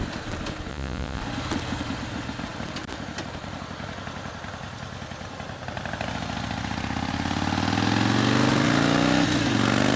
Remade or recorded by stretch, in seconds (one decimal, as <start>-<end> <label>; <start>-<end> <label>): 0.0-0.7 recorded; 0.7-1.2 remade; 1.2-10.0 recorded